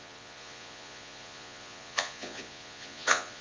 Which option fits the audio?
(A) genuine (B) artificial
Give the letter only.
B